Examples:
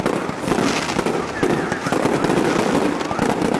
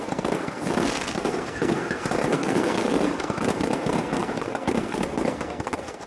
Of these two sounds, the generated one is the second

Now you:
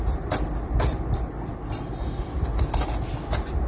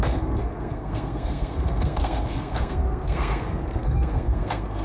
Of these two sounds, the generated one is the second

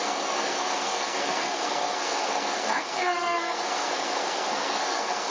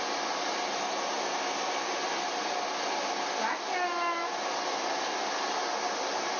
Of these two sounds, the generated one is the first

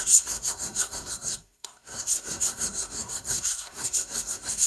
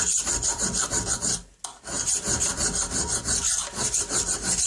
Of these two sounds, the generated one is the first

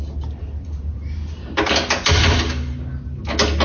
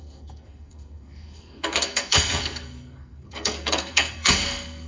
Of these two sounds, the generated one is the second